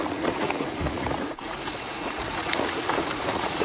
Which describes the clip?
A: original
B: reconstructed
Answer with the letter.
B